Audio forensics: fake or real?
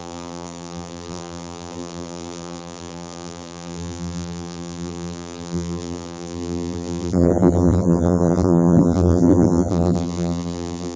fake